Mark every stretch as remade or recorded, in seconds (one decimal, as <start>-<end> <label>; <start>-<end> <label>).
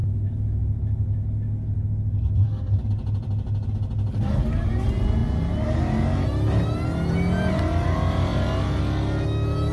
0.0-9.7 recorded